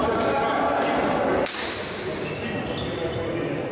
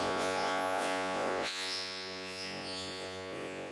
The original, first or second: first